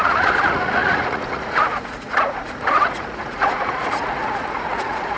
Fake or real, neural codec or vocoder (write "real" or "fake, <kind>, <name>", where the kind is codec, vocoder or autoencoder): fake, vocoder, Vocos